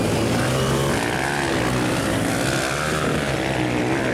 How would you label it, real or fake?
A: real